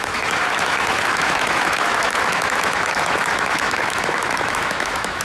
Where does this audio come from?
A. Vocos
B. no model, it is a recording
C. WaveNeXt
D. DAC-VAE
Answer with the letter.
D